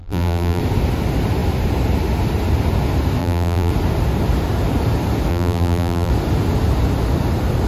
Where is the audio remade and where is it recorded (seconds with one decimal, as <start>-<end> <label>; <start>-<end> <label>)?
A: 0.0-0.6 remade; 0.6-3.2 recorded; 3.2-3.7 remade; 3.7-5.3 recorded; 5.3-6.1 remade; 6.1-7.7 recorded